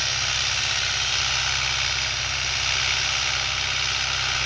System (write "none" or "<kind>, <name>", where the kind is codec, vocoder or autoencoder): none